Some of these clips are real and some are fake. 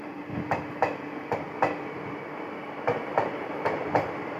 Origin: real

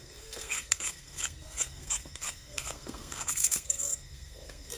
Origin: fake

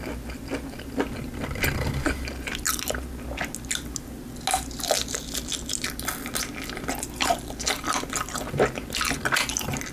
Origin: real